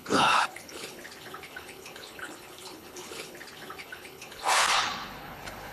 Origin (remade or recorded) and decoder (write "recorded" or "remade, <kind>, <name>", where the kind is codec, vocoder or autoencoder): remade, codec, HILCodec